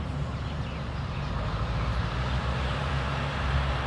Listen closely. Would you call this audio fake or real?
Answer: fake